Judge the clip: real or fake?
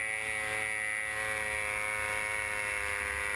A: real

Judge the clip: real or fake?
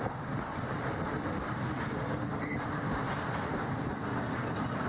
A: real